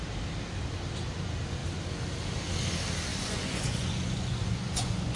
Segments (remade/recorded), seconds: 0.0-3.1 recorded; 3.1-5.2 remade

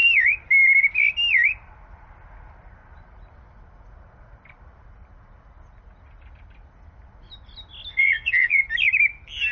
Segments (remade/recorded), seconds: 0.0-7.9 recorded; 7.9-8.6 remade; 8.6-9.5 recorded

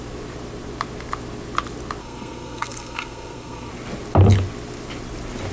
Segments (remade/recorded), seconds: 0.0-2.0 recorded; 2.0-3.7 remade; 3.7-5.5 recorded

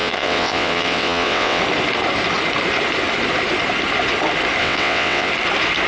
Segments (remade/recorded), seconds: 0.0-1.6 remade; 1.6-4.6 recorded; 4.6-5.3 remade; 5.3-5.9 recorded

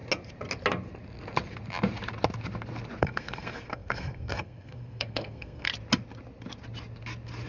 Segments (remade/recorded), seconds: 0.0-3.0 recorded; 3.0-5.7 remade; 5.7-7.5 recorded